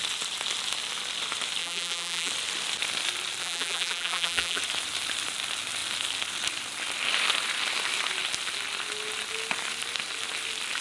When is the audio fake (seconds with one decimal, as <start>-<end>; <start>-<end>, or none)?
1.6-2.3; 3.4-4.6